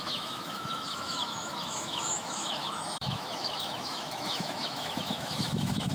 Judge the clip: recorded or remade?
remade